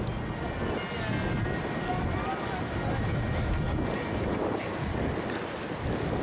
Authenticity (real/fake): real